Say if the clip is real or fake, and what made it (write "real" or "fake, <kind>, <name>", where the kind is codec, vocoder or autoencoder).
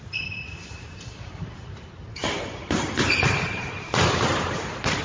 fake, vocoder, BigVGAN v2